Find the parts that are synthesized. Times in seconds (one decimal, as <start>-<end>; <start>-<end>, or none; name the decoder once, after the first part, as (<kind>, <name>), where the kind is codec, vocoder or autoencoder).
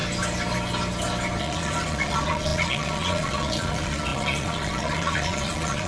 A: 1.4-5.9 (vocoder, Vocos)